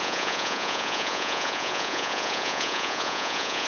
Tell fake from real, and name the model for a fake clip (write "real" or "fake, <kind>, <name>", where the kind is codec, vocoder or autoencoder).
fake, vocoder, Vocos